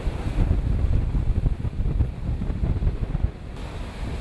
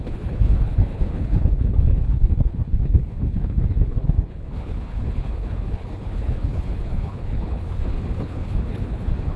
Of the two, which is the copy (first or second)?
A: second